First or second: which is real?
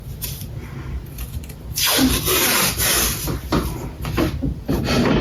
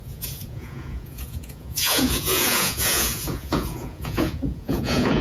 first